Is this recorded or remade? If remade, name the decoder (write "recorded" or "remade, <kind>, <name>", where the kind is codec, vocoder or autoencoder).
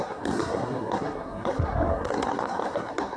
remade, codec, SNAC